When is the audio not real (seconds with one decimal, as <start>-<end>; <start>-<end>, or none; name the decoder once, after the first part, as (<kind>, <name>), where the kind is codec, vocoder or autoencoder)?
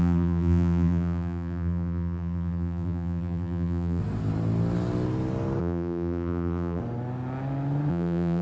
0.0-4.0 (vocoder, BigVGAN v2); 5.6-6.8; 7.9-8.4